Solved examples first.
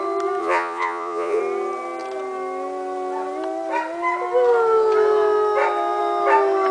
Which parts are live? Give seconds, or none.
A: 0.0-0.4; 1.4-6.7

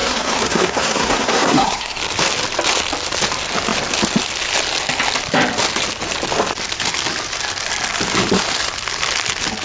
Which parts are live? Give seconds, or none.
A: 2.0-9.6

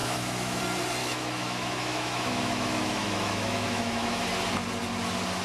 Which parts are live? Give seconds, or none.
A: 0.6-1.0; 4.2-5.4

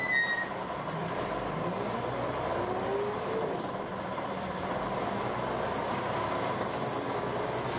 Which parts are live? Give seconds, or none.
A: 0.0-7.8

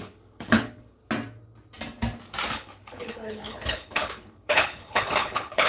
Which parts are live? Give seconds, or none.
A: 1.0-2.5

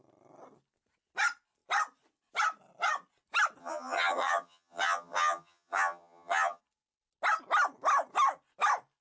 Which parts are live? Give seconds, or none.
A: 0.0-3.6; 6.6-9.0

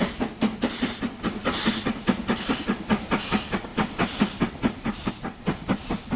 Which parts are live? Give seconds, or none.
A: 0.0-6.2